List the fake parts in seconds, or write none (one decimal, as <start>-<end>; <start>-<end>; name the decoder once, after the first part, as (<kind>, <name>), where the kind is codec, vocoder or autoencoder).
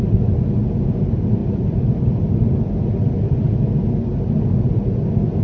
none